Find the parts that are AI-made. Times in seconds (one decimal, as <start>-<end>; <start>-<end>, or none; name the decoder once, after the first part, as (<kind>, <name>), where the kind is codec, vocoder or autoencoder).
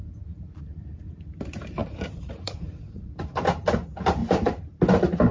1.8-3.1 (vocoder, Vocos)